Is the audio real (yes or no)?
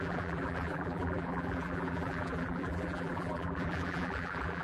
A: no